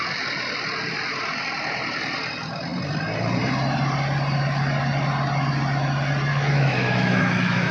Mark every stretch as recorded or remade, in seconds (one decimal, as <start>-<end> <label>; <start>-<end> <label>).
0.0-6.3 recorded; 6.3-7.7 remade